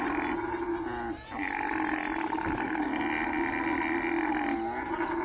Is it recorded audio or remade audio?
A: recorded